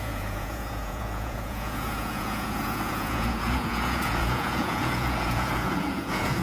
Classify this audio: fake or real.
fake